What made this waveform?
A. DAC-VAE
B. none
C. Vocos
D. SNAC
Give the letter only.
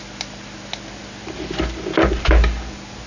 B